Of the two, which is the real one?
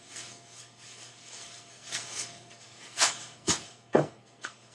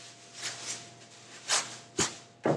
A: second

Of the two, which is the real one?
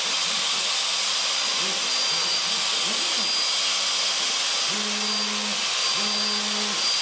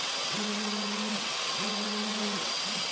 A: first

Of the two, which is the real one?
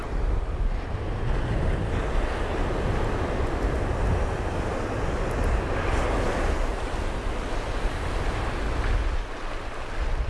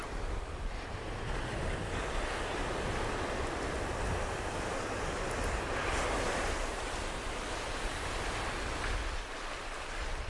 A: first